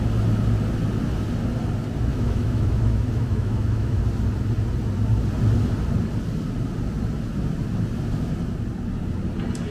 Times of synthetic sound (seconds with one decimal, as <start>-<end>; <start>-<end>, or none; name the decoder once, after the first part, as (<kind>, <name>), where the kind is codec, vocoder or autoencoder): 2.1-4.0 (autoencoder, DAC-VAE)